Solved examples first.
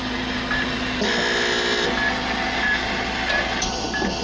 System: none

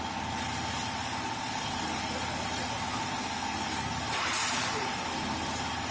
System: none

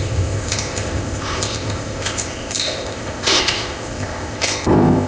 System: codec, ZipCodec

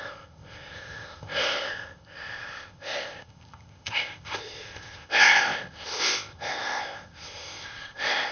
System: codec, ZipCodec